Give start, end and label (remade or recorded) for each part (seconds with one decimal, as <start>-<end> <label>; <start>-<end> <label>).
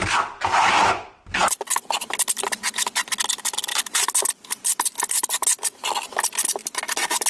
0.0-3.7 recorded; 3.7-4.6 remade; 4.6-7.3 recorded